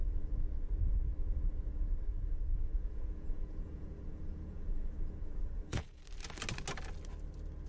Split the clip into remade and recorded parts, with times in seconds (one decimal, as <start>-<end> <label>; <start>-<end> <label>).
0.0-2.1 recorded; 2.1-6.0 remade; 6.0-7.7 recorded